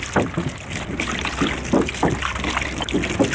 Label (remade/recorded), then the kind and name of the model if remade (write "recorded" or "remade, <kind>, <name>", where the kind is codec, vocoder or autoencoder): recorded